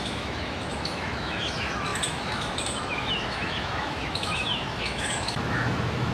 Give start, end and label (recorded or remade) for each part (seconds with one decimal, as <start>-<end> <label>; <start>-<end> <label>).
0.0-6.1 remade